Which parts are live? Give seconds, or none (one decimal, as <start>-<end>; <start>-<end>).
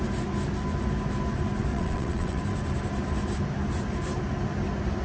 0.0-1.7; 2.4-5.0